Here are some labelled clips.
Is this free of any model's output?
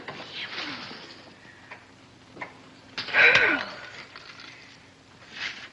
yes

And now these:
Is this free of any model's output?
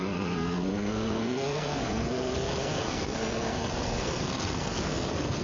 no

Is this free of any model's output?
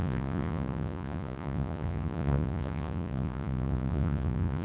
no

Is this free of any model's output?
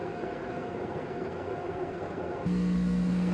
no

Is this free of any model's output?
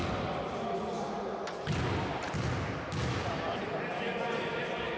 yes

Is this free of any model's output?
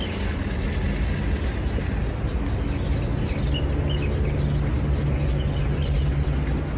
yes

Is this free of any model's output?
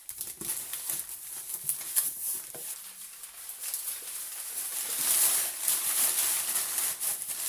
no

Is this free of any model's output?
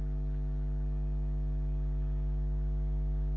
yes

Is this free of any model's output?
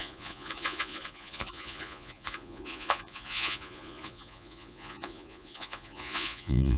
no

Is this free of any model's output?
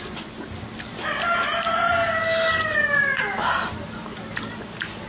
yes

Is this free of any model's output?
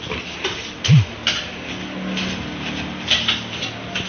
yes